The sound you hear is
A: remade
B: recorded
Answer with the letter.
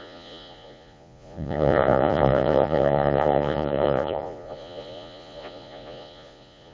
A